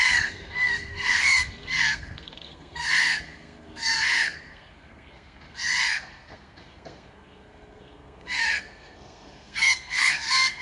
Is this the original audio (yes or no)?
no